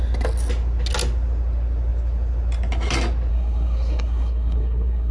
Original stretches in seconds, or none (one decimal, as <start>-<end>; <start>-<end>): 0.0-3.3